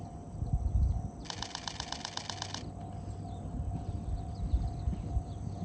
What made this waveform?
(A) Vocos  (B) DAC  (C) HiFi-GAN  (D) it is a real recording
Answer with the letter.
D